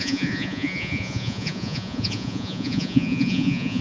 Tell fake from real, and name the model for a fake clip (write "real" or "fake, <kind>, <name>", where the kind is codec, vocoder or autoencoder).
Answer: fake, vocoder, Vocos